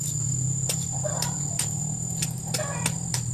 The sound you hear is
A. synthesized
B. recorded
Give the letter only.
B